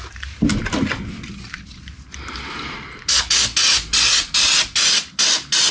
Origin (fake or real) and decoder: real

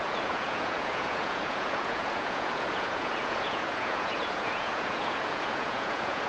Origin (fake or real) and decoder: fake, vocoder, Vocos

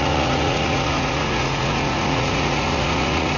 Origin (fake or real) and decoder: fake, vocoder, Vocos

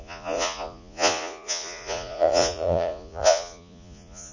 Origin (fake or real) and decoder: fake, vocoder, Vocos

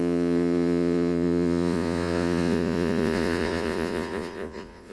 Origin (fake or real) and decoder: fake, vocoder, Vocos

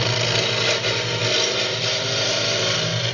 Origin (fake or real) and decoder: real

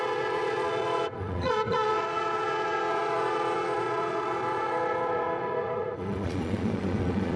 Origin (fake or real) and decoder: fake, vocoder, Vocos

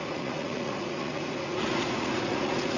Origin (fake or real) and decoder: fake, vocoder, Vocos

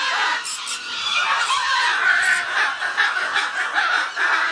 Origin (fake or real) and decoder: real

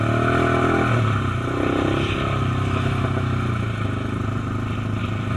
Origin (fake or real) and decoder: real